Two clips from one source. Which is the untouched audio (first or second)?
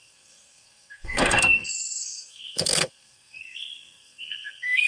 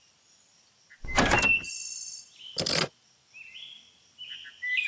second